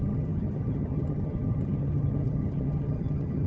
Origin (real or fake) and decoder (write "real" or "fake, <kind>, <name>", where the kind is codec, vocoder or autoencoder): fake, vocoder, HiFi-GAN